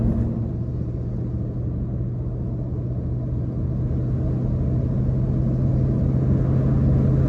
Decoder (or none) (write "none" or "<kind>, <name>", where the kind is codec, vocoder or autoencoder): none